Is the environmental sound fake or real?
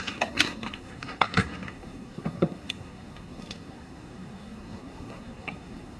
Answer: fake